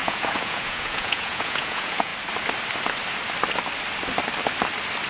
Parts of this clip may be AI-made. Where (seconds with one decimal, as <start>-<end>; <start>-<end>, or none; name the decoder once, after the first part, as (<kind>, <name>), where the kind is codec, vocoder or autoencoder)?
0.0-2.1 (vocoder, Vocos)